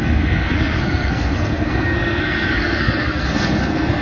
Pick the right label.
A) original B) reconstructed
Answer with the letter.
B